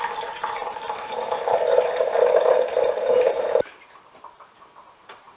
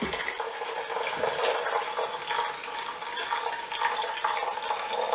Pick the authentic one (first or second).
second